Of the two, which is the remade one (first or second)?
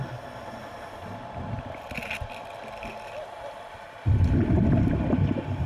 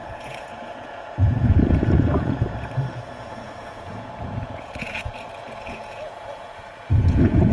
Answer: second